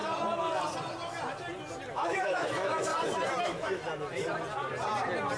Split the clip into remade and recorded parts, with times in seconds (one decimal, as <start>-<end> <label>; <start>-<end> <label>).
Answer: 0.0-1.9 recorded; 1.9-2.9 remade; 2.9-3.4 recorded; 3.4-3.8 remade; 3.8-5.4 recorded